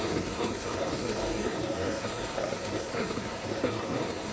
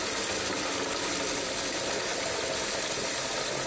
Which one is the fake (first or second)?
first